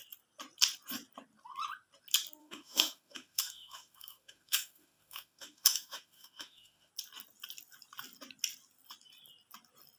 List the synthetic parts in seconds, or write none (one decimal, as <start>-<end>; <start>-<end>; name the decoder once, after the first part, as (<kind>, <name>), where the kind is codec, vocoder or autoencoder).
2.4-6.9 (autoencoder, DAC-VAE)